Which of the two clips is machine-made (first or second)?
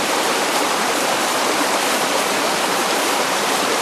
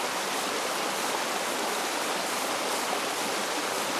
first